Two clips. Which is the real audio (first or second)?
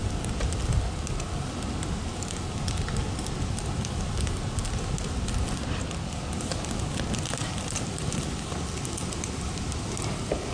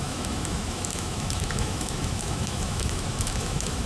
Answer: first